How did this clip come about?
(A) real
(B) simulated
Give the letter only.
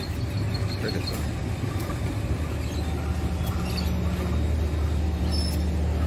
A